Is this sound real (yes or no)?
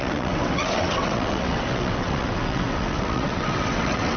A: no